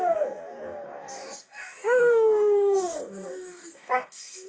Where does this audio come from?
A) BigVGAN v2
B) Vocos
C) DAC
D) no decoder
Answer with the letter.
C